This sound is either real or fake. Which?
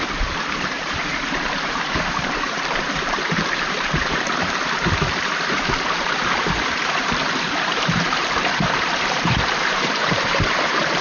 fake